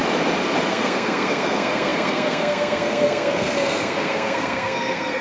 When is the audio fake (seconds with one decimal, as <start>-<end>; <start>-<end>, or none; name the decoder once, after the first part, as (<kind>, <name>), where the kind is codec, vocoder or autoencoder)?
0.7-5.2 (codec, SNAC)